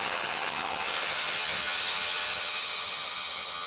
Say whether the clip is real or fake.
fake